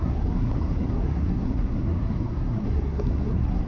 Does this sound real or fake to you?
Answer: fake